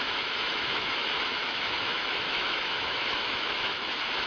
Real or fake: fake